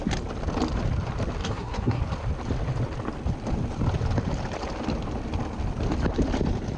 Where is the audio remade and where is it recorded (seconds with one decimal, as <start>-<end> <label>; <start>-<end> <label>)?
0.0-1.4 recorded; 1.4-2.0 remade; 2.0-6.8 recorded